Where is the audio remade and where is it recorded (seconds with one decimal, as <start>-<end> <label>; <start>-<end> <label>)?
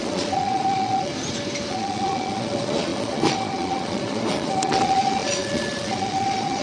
0.0-1.1 remade; 1.1-1.7 recorded; 1.7-6.6 remade